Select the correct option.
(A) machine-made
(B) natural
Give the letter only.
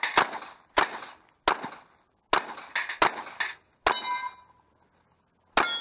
B